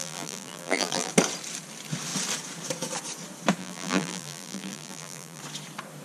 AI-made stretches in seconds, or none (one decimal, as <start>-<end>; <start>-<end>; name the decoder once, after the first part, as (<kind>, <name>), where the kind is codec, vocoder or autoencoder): 0.0-1.1 (vocoder, BigVGAN v2); 3.6-5.4